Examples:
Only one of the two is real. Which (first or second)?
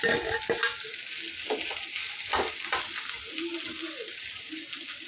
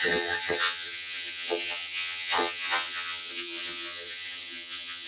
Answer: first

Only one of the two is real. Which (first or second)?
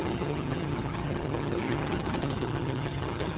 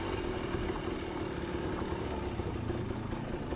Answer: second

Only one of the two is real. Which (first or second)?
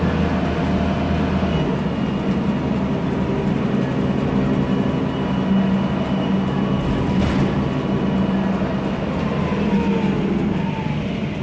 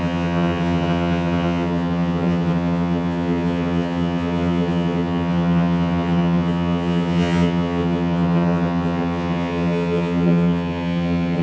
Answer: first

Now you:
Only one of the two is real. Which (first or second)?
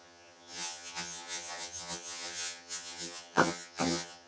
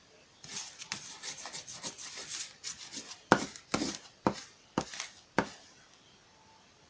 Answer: second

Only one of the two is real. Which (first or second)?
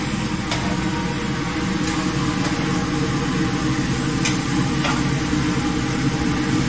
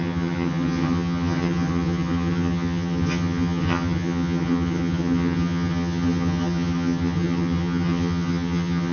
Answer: first